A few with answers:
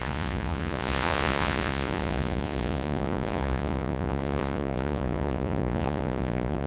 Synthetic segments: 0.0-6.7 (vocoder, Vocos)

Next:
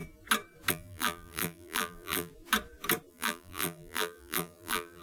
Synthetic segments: 0.7-2.3 (vocoder, BigVGAN v2); 3.1-5.0

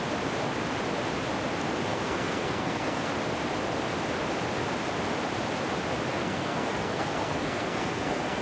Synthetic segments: 1.9-3.1 (codec, SNAC); 6.1-8.4

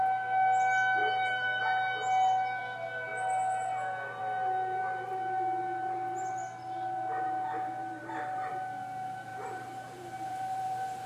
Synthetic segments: 1.0-1.6 (vocoder, BigVGAN v2); 7.8-8.5; 9.3-11.1